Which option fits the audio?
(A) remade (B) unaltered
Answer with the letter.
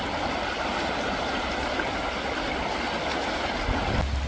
B